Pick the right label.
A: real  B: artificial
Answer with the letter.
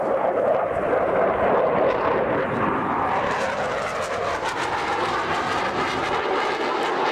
A